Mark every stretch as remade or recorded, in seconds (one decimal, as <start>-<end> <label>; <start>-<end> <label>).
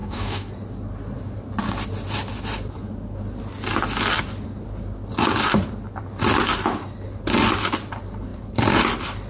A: 0.0-0.5 remade; 0.5-9.3 recorded